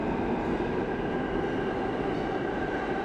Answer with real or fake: real